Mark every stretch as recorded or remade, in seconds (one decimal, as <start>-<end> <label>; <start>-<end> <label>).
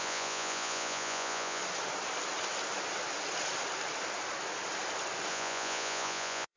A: 0.0-1.6 remade; 1.6-5.3 recorded; 5.3-6.6 remade